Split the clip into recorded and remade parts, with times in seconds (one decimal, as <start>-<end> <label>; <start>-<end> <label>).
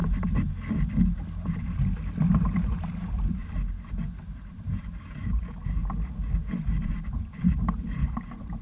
0.0-2.3 recorded; 2.3-3.4 remade; 3.4-4.3 recorded; 4.3-5.8 remade; 5.8-6.5 recorded; 6.5-8.6 remade